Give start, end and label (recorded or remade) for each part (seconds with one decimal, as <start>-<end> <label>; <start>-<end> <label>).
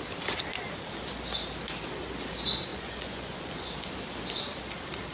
0.0-2.7 recorded; 2.7-3.7 remade; 3.7-5.1 recorded